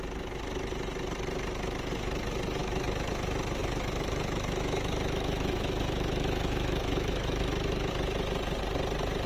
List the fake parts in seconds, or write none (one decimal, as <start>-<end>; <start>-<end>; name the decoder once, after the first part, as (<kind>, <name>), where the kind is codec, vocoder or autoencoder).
2.6-3.1 (autoencoder, DAC-VAE); 3.6-7.9